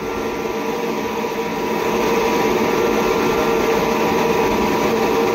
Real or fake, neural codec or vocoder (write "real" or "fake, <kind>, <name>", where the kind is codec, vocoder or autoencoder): real